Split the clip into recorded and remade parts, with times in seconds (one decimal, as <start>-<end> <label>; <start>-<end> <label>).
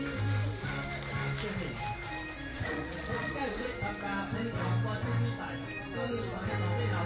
0.0-2.5 recorded; 2.5-3.7 remade; 3.7-7.1 recorded